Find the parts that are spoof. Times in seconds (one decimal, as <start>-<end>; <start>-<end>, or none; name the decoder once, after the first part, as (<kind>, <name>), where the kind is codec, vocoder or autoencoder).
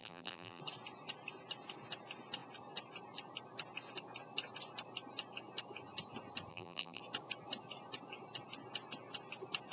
0.0-0.6 (vocoder, BigVGAN v2); 6.5-7.0